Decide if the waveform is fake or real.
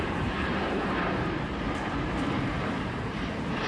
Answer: fake